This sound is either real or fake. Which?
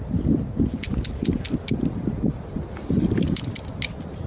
real